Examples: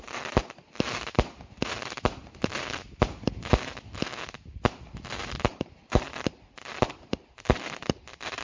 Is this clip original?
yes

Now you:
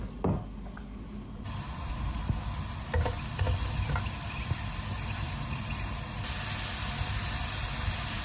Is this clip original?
yes